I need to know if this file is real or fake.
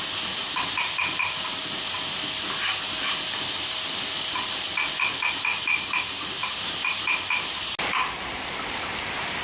real